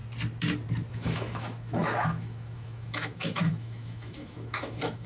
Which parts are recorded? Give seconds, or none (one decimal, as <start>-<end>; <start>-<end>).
0.0-0.9